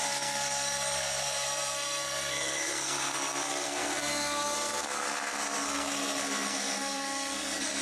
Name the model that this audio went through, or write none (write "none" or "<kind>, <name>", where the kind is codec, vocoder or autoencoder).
codec, SNAC